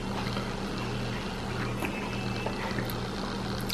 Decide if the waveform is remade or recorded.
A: recorded